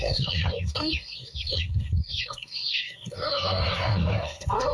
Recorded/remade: remade